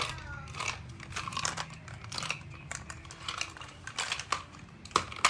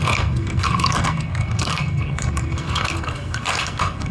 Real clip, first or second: first